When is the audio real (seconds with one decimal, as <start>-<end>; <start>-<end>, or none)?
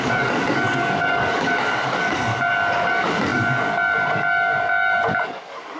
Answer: 2.3-2.9